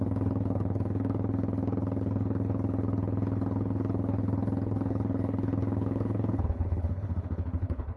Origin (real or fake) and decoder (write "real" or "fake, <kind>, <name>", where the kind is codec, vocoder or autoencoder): fake, codec, HILCodec